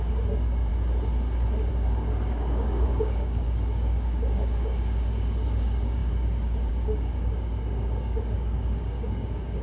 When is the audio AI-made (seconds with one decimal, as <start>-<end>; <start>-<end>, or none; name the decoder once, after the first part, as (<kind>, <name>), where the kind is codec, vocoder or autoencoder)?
0.0-0.7 (codec, DAC); 1.7-9.6